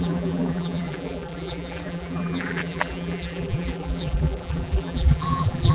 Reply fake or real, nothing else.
fake